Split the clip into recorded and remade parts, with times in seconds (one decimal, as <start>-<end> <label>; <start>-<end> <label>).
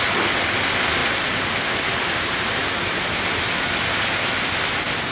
0.0-5.1 recorded